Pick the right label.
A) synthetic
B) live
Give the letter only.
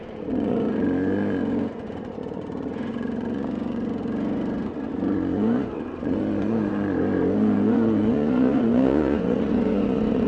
A